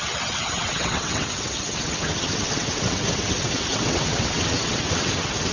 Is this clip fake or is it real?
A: fake